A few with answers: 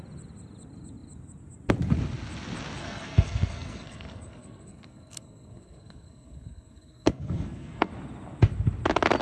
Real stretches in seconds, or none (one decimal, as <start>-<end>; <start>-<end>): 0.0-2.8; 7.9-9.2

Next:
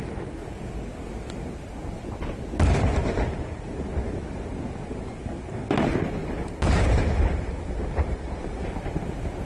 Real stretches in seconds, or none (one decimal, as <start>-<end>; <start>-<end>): 0.0-6.2; 8.7-9.5

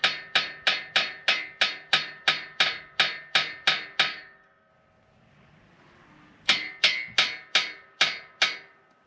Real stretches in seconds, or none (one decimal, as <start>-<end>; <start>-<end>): 0.0-4.1; 4.7-9.1